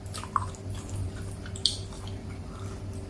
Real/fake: real